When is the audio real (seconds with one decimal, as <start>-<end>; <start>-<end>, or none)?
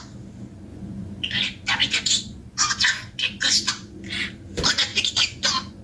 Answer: 0.0-0.7; 1.4-1.8; 4.0-4.9